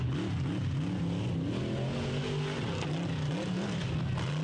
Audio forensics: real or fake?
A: real